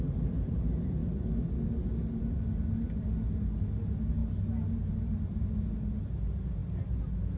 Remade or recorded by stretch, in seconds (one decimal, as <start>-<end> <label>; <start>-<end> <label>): 0.0-7.4 recorded